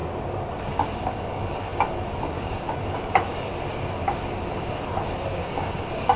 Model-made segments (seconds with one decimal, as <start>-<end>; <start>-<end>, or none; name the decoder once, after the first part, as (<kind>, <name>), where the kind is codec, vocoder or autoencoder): 0.6-1.7 (codec, DAC); 2.2-3.5; 5.4-6.2